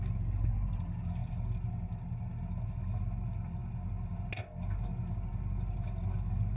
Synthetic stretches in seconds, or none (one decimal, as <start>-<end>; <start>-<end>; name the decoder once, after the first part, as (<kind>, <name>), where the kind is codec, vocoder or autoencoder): none